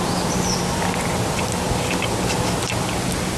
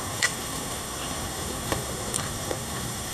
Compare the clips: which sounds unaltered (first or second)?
first